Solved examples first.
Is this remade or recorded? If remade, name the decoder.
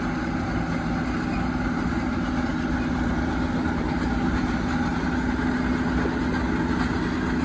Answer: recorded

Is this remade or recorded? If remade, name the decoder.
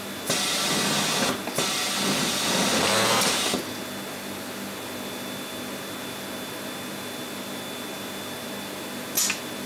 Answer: recorded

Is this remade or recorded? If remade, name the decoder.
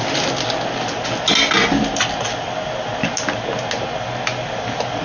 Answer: recorded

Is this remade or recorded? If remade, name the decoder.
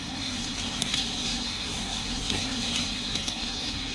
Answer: remade, codec, SNAC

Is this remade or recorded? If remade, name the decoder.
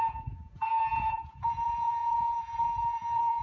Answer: remade, vocoder, Vocos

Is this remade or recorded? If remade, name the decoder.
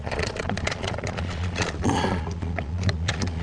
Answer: remade, vocoder, Vocos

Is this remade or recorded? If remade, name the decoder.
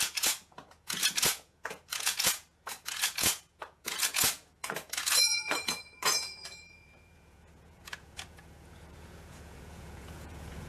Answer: remade, vocoder, Vocos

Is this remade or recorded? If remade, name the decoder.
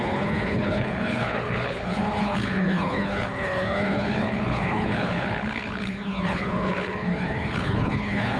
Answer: remade, codec, HILCodec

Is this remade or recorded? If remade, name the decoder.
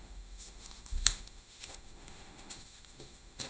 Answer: remade, autoencoder, DAC-VAE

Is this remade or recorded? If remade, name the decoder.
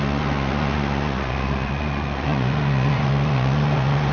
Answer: remade, vocoder, Vocos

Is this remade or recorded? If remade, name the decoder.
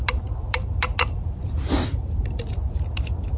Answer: recorded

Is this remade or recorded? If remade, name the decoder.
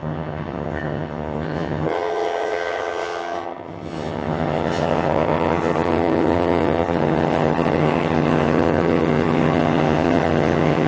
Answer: remade, vocoder, HiFi-GAN